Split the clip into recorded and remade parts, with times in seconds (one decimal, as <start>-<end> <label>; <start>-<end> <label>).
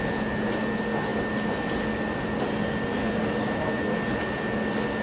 0.0-5.0 recorded